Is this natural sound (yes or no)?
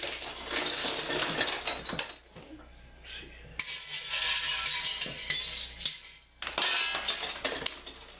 yes